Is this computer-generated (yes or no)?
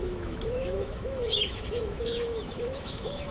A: yes